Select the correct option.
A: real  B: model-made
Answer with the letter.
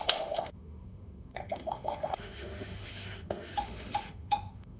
B